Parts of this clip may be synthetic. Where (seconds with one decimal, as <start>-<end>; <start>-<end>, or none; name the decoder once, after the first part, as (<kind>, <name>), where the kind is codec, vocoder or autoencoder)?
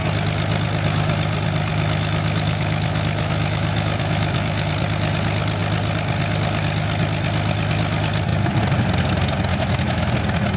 1.7-4.7 (autoencoder, DAC-VAE); 9.5-10.1